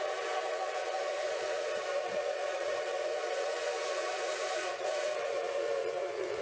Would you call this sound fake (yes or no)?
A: yes